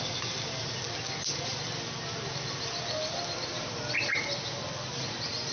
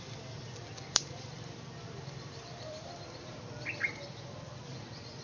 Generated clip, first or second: second